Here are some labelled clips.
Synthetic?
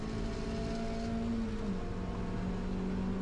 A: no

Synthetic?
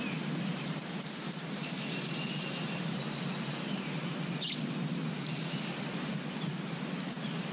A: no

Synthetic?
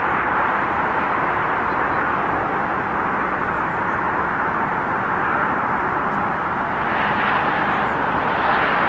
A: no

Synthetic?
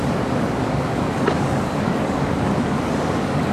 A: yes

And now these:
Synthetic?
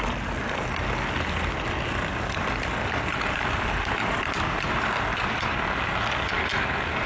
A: no